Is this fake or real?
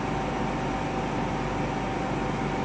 real